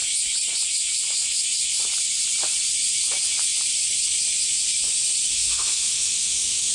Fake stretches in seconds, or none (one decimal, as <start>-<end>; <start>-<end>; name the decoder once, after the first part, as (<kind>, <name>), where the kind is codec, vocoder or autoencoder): 5.3-6.7 (autoencoder, DAC-VAE)